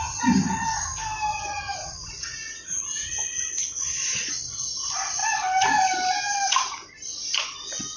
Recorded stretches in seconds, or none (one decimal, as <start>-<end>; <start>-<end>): 0.0-1.3; 3.5-8.0